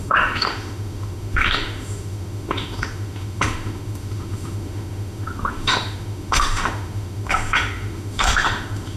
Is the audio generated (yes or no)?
yes